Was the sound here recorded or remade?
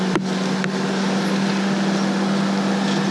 recorded